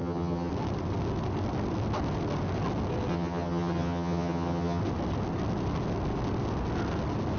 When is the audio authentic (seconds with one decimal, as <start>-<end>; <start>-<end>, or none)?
0.5-3.1; 4.8-7.4